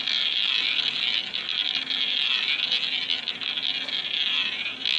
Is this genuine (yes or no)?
yes